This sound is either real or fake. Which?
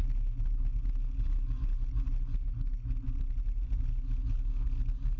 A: real